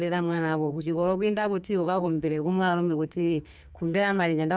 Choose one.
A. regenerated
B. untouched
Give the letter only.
A